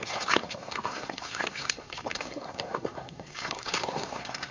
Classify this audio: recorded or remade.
remade